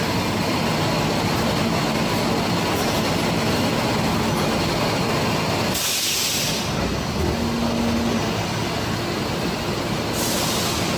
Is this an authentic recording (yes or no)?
yes